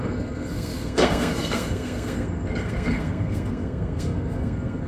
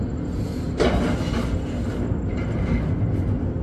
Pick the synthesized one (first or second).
first